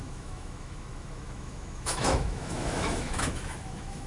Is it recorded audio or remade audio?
remade